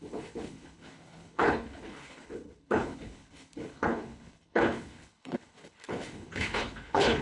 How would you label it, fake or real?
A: fake